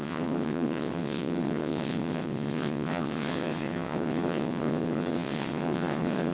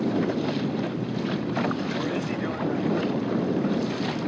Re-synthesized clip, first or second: first